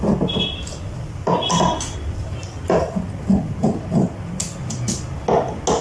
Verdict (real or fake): real